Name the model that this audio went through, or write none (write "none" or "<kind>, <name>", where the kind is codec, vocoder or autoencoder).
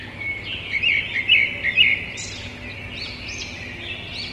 none